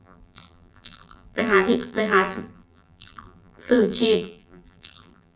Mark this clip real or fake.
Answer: fake